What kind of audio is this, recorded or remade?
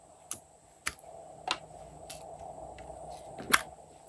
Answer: recorded